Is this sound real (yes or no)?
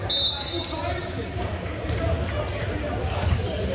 yes